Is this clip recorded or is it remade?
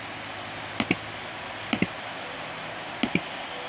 recorded